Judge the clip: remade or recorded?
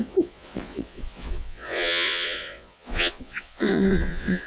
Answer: remade